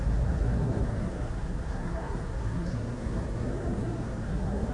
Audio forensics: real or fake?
fake